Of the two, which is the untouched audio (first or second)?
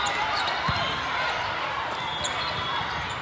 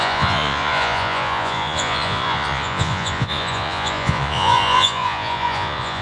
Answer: first